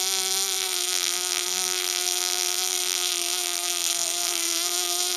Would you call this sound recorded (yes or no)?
no